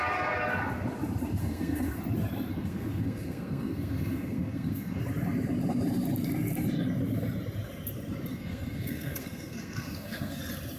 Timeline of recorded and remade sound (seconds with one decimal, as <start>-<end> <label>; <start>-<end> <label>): 0.0-1.4 recorded; 1.4-2.0 remade; 2.0-2.5 recorded; 2.5-5.0 remade; 5.0-8.3 recorded; 8.3-10.4 remade; 10.4-10.8 recorded